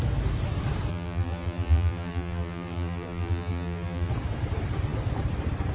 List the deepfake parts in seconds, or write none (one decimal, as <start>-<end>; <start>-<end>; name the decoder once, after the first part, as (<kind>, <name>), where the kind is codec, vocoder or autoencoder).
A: 0.9-4.1 (vocoder, BigVGAN v2)